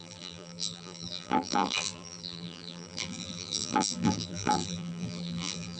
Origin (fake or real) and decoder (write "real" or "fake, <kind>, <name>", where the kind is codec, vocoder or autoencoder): fake, vocoder, BigVGAN v2